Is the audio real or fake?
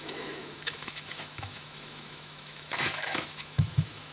fake